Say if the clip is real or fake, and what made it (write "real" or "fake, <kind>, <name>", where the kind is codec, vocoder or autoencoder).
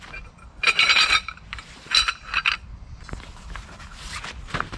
fake, vocoder, BigVGAN v2